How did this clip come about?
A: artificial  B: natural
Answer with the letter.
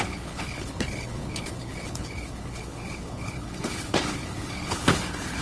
A